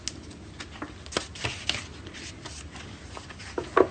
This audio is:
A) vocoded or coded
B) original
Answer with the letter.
B